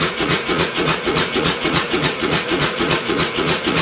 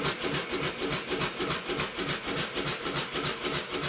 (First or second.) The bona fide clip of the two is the second